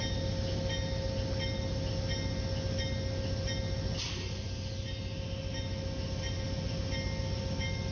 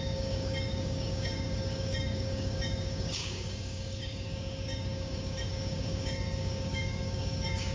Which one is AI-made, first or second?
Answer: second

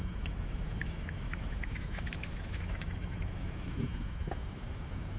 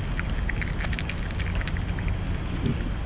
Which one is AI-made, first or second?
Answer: first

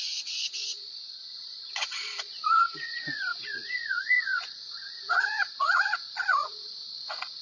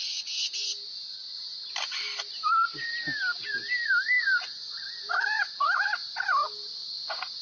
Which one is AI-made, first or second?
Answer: first